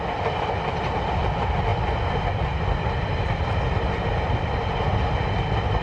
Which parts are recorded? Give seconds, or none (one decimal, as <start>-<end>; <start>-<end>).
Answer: 0.0-5.8